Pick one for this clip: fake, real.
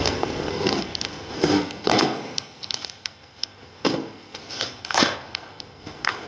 fake